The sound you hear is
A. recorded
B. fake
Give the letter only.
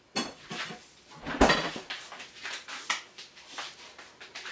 A